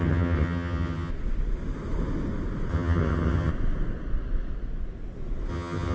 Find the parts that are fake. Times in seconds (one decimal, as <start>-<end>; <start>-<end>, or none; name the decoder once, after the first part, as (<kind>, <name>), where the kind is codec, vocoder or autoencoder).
0.0-1.1 (vocoder, HiFi-GAN); 2.7-3.5; 5.5-5.9